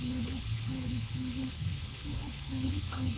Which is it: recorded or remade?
remade